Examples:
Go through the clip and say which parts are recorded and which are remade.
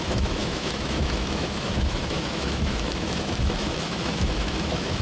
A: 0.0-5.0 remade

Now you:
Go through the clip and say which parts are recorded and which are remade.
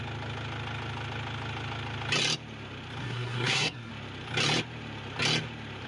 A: 0.0-3.0 recorded; 3.0-3.9 remade; 3.9-5.9 recorded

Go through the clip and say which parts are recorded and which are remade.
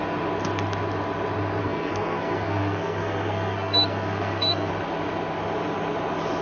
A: 0.0-1.6 recorded; 1.6-4.7 remade; 4.7-6.4 recorded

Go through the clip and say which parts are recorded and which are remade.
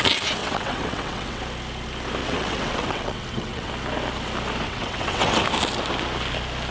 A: 0.0-0.4 recorded; 0.4-1.4 remade; 1.4-2.2 recorded; 2.2-3.7 remade; 3.7-4.6 recorded; 4.6-5.4 remade; 5.4-6.7 recorded